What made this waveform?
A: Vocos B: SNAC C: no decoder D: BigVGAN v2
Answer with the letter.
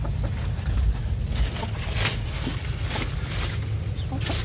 C